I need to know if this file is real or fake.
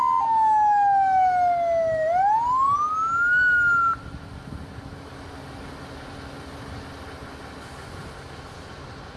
real